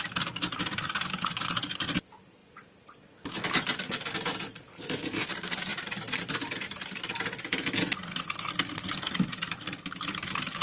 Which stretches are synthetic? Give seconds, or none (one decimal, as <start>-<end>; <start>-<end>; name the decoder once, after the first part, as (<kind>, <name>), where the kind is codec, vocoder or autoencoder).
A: none